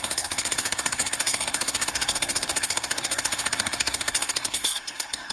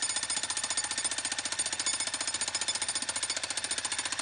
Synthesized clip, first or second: first